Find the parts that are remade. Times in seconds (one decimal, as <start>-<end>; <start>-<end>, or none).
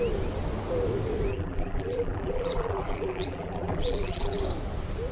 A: 1.3-4.4